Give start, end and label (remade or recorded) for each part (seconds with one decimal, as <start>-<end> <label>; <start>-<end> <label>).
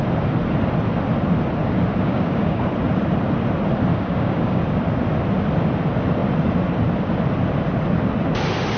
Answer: 0.0-2.0 recorded; 2.0-2.6 remade; 2.6-3.9 recorded; 3.9-4.6 remade; 4.6-8.8 recorded